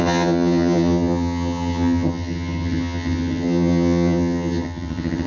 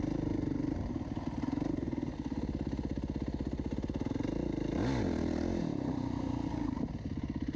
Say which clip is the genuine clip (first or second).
second